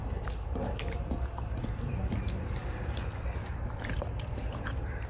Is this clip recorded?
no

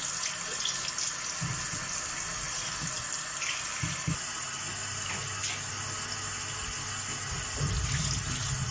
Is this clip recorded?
yes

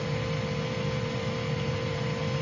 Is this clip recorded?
yes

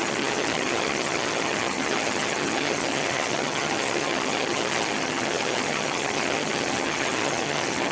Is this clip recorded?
no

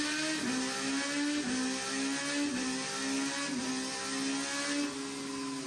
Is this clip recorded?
yes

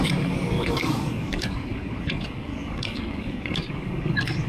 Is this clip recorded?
no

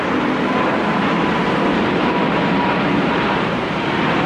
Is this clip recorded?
no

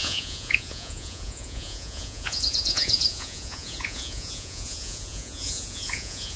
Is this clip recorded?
no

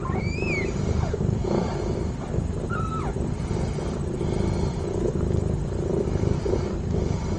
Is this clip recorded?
no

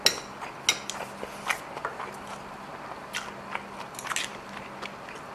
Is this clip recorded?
yes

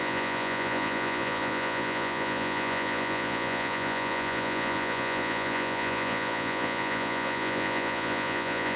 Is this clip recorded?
no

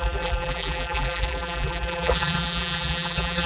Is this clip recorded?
no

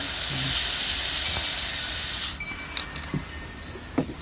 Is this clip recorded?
yes